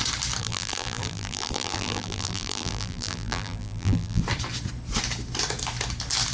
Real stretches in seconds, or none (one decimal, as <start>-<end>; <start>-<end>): 0.0-0.4; 4.2-6.3